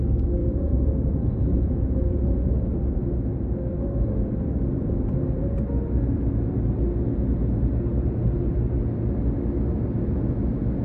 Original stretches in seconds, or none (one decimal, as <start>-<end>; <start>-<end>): 0.0-0.4; 2.4-10.8